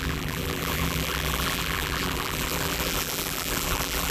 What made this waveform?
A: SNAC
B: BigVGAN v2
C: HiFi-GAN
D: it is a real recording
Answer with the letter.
B